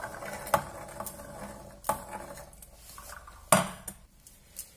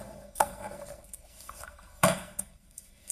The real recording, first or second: first